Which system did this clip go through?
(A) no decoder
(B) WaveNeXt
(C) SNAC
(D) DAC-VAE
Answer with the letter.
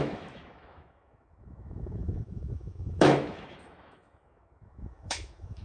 D